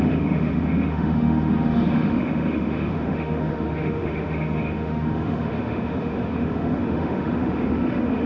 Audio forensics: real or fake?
fake